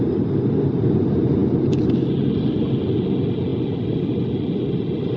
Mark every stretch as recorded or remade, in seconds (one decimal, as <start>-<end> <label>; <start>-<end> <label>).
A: 0.0-5.2 recorded